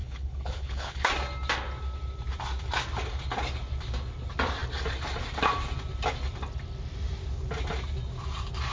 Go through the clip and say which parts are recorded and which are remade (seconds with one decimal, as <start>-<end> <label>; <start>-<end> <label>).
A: 0.0-1.1 remade; 1.1-8.7 recorded